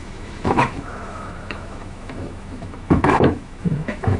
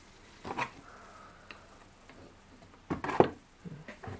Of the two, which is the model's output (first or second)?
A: first